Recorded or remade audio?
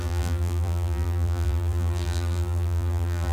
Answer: remade